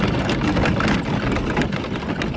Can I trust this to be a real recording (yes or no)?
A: yes